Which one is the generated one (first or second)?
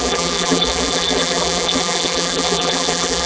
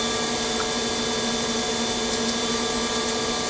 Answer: first